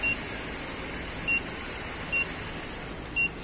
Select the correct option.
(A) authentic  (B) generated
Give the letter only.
A